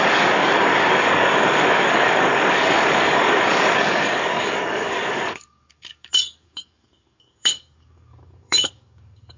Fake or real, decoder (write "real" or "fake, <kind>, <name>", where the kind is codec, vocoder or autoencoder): fake, codec, DAC